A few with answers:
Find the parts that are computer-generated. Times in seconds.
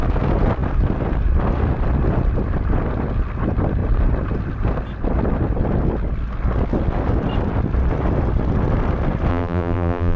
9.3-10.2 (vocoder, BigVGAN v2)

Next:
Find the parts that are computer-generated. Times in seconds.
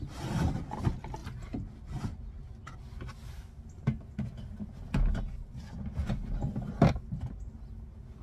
6.0-6.9 (vocoder, BigVGAN v2)